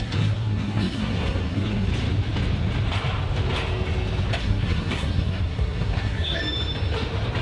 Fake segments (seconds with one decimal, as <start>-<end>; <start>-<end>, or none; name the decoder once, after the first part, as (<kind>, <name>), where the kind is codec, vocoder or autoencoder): 0.0-1.9 (codec, SNAC); 4.4-6.4